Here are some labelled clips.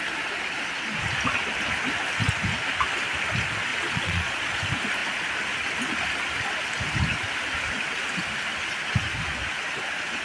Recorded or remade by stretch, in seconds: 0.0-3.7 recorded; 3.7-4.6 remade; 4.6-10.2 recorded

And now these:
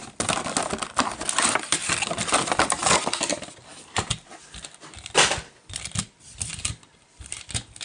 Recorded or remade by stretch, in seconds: 0.0-7.8 recorded

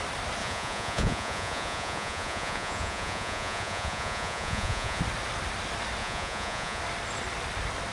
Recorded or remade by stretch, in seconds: 0.0-0.4 recorded; 0.4-5.0 remade; 5.0-6.0 recorded; 6.0-6.8 remade; 6.8-7.9 recorded